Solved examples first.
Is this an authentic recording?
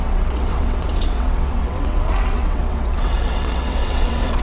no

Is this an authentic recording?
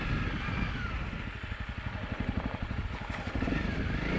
yes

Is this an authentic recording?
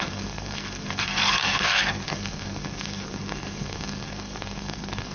no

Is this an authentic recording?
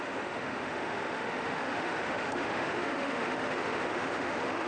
no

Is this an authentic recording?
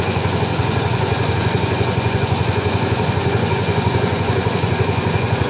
no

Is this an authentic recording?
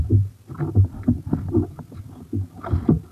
yes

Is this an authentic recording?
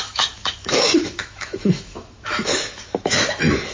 no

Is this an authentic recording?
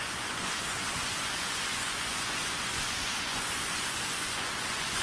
no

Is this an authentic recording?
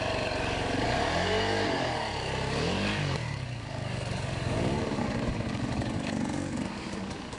no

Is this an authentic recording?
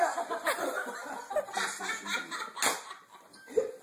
yes